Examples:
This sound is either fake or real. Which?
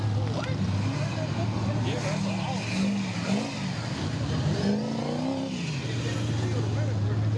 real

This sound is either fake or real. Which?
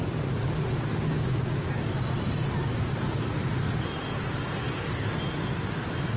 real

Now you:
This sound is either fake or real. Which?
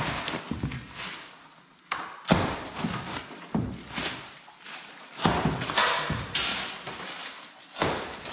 real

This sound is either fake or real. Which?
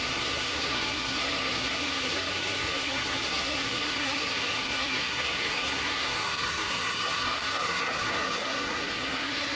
fake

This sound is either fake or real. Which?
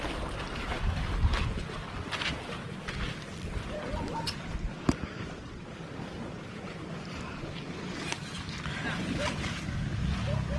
real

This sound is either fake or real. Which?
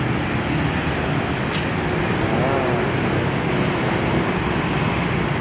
real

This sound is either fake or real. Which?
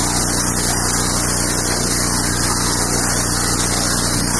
real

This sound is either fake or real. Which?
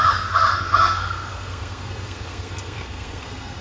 fake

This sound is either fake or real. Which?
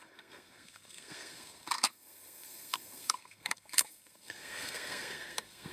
fake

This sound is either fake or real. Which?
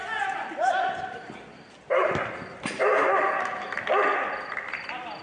real